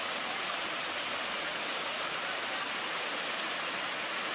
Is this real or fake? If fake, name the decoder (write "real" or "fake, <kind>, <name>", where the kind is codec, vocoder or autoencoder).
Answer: real